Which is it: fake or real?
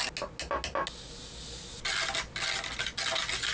real